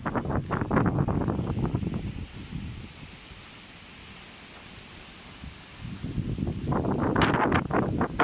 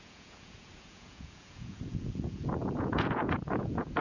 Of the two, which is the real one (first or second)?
first